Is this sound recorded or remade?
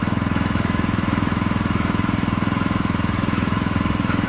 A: remade